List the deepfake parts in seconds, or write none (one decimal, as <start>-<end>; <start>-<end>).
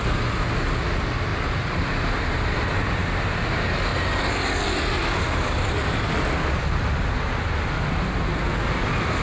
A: none